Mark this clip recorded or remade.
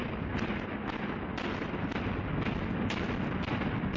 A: recorded